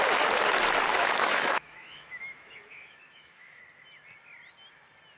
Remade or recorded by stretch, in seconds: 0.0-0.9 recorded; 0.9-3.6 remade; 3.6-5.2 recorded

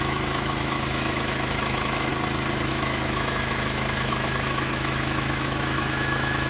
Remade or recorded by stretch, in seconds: 0.0-2.1 remade; 2.1-2.7 recorded; 2.7-6.5 remade